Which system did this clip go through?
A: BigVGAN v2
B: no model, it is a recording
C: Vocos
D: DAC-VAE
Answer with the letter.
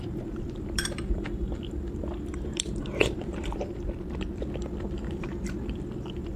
A